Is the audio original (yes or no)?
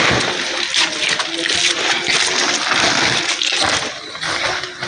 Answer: yes